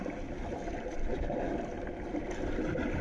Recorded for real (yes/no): yes